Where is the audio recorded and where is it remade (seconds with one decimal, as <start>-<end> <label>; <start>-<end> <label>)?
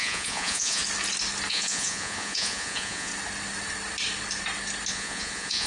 0.0-0.8 remade; 0.8-1.5 recorded; 1.5-3.1 remade; 3.1-4.9 recorded; 4.9-5.7 remade